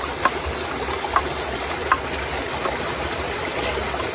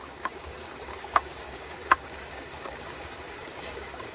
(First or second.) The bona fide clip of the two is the first